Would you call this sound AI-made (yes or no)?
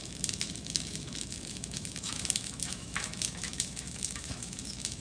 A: yes